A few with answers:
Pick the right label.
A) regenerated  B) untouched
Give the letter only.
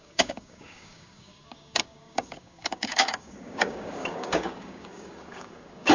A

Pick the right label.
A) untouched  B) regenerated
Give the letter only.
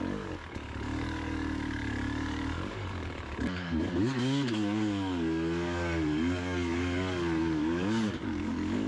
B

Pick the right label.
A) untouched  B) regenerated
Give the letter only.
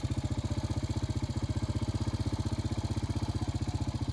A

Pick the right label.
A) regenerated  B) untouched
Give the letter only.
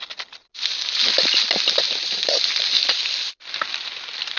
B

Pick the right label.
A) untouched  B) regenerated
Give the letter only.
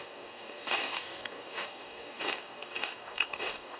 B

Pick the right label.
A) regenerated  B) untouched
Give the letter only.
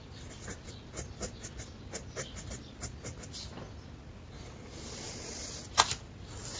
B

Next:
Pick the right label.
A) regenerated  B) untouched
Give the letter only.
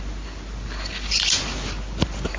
B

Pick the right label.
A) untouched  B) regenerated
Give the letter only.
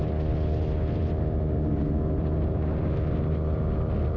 A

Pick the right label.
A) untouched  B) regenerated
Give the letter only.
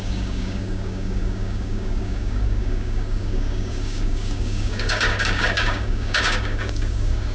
B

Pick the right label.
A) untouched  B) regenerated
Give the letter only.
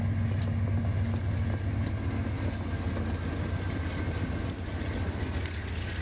A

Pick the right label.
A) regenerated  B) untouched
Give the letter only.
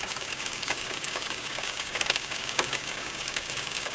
A